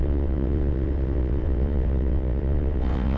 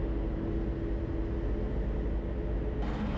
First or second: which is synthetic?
first